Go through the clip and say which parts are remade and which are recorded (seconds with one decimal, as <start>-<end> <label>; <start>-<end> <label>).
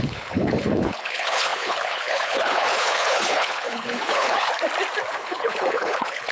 0.0-4.5 remade; 4.5-5.1 recorded; 5.1-6.3 remade